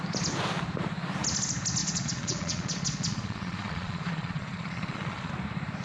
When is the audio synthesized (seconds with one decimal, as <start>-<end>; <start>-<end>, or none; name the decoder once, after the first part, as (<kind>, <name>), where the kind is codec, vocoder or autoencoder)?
1.8-5.3 (vocoder, Vocos)

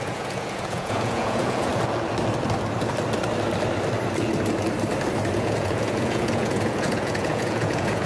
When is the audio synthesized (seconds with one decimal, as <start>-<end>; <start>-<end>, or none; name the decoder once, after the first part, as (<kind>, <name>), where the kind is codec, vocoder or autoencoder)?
0.0-1.7 (vocoder, Vocos); 5.3-8.1

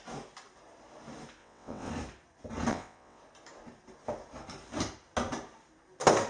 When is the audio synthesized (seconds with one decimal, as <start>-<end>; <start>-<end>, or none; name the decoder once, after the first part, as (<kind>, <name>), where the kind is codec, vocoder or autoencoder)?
1.4-1.9 (vocoder, WaveNeXt); 2.7-3.2

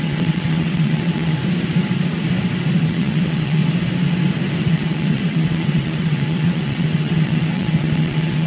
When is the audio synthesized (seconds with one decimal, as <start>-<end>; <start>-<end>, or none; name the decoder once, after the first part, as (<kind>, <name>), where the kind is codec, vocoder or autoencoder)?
0.0-1.4 (vocoder, WaveNeXt); 2.8-3.6; 4.6-8.5

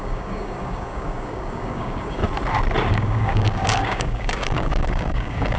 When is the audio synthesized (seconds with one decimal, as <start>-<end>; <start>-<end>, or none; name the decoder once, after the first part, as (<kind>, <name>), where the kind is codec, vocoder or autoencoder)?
0.0-2.2 (codec, DAC); 2.9-5.6

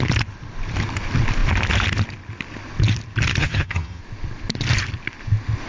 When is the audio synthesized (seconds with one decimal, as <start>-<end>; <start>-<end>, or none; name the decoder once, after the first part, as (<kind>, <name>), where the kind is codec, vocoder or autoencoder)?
3.4-4.0 (vocoder, HiFi-GAN)